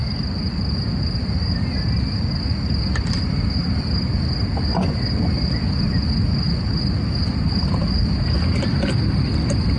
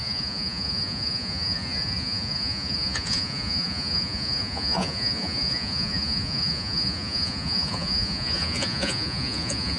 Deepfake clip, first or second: second